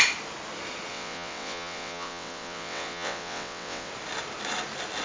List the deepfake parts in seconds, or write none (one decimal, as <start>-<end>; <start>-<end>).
0.9-3.9